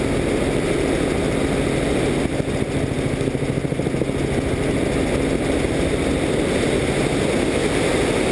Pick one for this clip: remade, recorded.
recorded